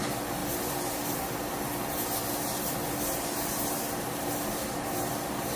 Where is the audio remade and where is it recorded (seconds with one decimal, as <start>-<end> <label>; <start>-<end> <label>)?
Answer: 0.0-5.6 recorded

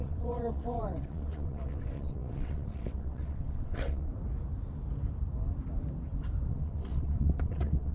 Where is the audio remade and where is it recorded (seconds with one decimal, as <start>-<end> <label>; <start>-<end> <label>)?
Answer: 0.0-4.1 remade; 4.1-6.5 recorded; 6.5-7.9 remade

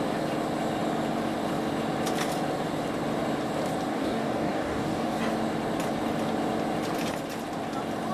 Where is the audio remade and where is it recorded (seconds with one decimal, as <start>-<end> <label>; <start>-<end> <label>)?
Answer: 0.0-3.9 recorded; 3.9-5.2 remade; 5.2-8.1 recorded

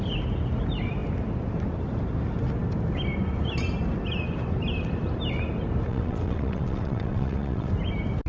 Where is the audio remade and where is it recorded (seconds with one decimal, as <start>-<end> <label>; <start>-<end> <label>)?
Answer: 0.0-5.9 recorded; 5.9-7.7 remade; 7.7-8.3 recorded

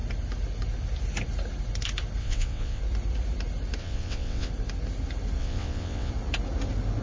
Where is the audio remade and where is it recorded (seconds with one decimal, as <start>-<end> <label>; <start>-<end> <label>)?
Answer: 0.0-2.2 recorded; 2.2-2.8 remade; 2.8-3.8 recorded; 3.8-4.5 remade; 4.5-5.4 recorded; 5.4-6.1 remade; 6.1-7.0 recorded

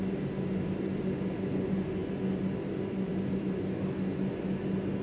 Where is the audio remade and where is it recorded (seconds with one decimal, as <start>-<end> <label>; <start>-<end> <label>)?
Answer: 0.0-5.0 recorded